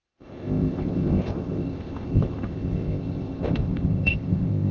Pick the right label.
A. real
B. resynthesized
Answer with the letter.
B